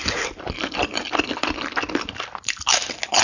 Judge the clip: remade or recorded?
recorded